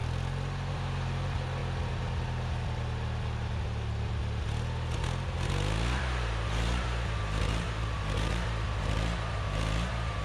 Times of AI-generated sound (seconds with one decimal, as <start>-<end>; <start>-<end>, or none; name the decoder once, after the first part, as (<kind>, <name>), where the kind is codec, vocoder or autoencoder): 0.7-1.6 (vocoder, BigVGAN v2); 6.0-10.2